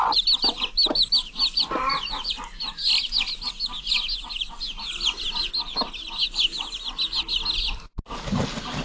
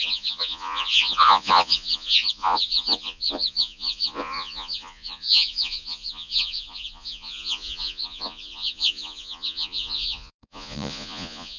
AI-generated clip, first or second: second